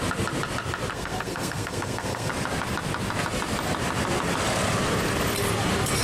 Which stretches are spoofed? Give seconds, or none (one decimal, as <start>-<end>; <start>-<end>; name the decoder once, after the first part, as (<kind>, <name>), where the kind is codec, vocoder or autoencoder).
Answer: 0.9-2.3 (codec, SNAC)